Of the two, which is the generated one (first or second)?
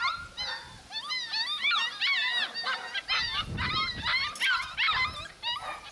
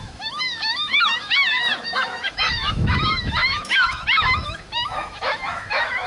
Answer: second